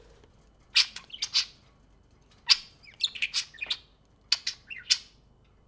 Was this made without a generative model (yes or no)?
yes